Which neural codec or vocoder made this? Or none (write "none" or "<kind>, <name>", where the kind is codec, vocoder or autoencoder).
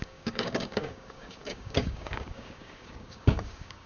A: codec, DAC